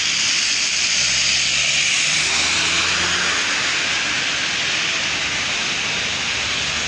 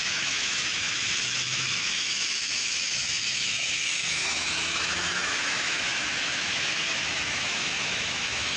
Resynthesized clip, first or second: second